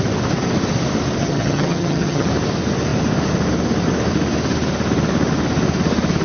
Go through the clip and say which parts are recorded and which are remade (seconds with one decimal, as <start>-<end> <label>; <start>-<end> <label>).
0.0-1.2 recorded; 1.2-2.3 remade; 2.3-6.2 recorded